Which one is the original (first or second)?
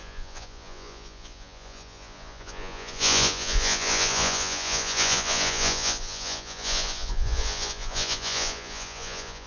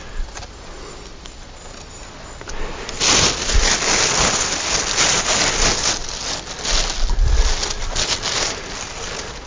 second